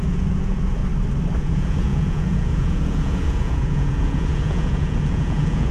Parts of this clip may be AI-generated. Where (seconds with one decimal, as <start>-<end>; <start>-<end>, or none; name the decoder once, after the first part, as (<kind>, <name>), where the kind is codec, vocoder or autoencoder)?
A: 0.0-0.8 (vocoder, Vocos); 1.4-5.7